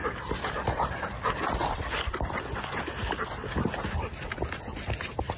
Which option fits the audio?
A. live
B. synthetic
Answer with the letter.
A